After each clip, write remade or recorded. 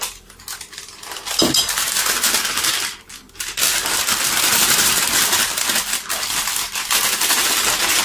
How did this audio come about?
recorded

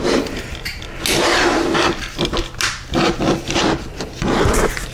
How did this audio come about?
recorded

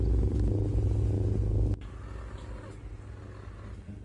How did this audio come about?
recorded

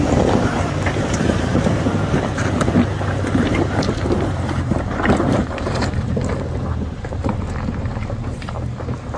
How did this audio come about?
remade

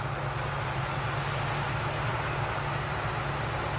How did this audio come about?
recorded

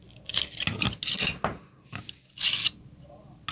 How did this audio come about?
recorded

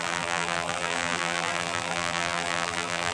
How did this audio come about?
remade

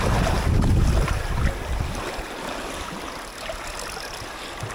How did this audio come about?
recorded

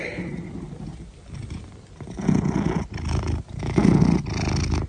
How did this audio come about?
recorded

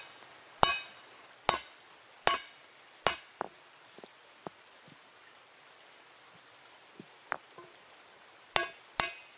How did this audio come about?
recorded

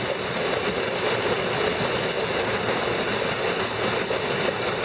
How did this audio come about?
recorded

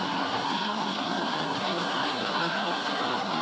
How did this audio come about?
remade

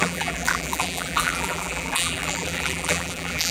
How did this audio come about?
remade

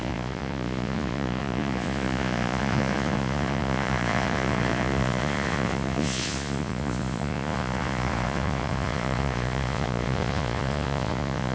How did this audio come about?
remade